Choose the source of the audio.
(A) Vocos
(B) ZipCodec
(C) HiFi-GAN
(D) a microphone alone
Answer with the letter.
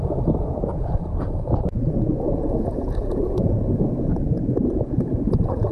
A